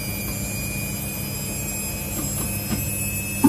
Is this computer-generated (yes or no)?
no